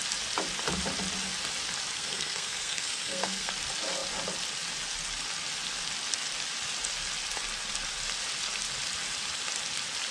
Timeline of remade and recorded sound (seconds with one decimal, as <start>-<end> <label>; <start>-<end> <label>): 0.0-1.9 recorded; 1.9-3.5 remade; 3.5-10.1 recorded